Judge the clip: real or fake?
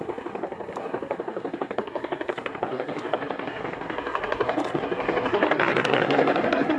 fake